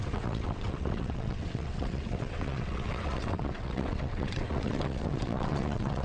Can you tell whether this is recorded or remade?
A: remade